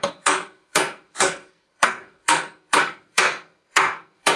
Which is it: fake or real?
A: fake